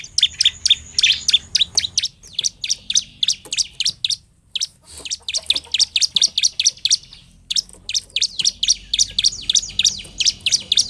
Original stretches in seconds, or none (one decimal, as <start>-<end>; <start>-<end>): 0.0-10.9